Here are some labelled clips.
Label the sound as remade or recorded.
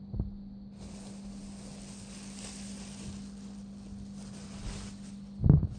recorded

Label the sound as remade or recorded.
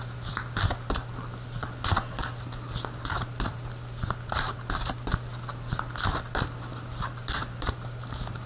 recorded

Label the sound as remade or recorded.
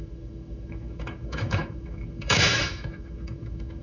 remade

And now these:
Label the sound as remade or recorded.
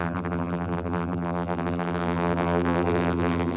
remade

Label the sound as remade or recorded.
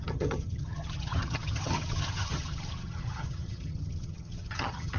remade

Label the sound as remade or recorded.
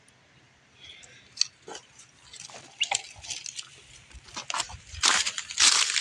recorded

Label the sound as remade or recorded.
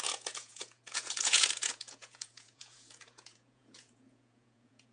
remade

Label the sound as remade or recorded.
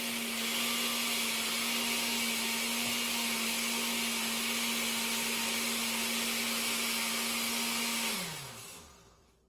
recorded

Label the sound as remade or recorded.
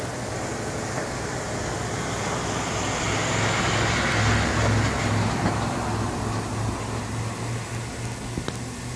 recorded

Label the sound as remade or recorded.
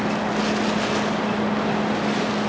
recorded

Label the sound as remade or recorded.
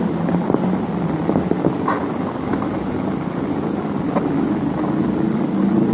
recorded